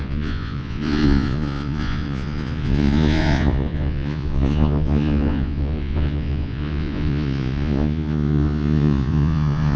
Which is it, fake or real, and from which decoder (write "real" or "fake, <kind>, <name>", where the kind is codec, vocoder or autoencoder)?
fake, vocoder, Vocos